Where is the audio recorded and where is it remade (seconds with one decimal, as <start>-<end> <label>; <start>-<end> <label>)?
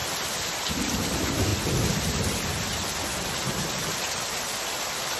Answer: 0.0-5.2 recorded